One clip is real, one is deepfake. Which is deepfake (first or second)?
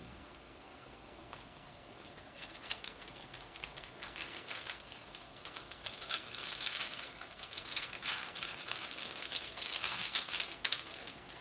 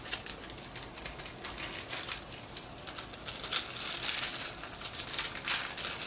first